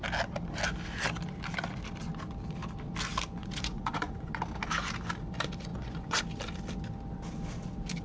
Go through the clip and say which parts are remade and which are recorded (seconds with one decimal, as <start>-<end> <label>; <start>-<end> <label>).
0.0-3.4 recorded; 3.4-4.4 remade; 4.4-5.7 recorded; 5.7-6.2 remade; 6.2-8.0 recorded